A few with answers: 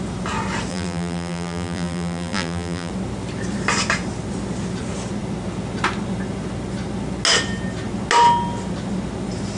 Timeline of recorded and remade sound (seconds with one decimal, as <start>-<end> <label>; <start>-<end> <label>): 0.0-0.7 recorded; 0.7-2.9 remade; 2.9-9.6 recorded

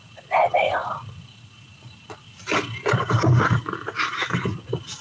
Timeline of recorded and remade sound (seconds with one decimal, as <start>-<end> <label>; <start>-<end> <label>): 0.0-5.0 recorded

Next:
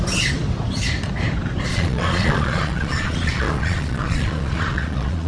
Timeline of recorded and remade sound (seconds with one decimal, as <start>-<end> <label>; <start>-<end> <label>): 0.0-1.7 recorded; 1.7-5.3 remade

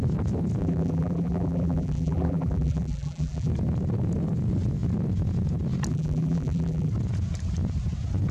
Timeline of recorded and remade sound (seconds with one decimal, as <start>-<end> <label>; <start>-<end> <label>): 0.0-0.6 recorded; 0.6-3.5 remade; 3.5-5.9 recorded; 5.9-6.9 remade; 6.9-8.3 recorded

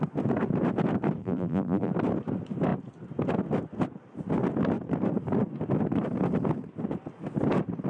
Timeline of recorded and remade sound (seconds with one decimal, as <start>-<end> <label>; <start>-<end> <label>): 0.0-1.2 recorded; 1.2-1.9 remade; 1.9-7.9 recorded

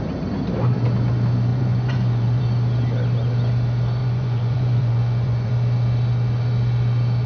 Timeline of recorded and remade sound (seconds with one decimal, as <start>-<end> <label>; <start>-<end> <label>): 0.0-1.5 recorded; 1.5-2.4 remade; 2.4-4.0 recorded; 4.0-5.5 remade; 5.5-7.3 recorded

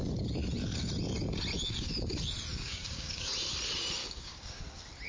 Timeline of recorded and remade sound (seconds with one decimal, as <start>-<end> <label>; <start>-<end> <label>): 0.0-2.5 recorded; 2.5-3.3 remade; 3.3-4.0 recorded; 4.0-4.6 remade; 4.6-5.1 recorded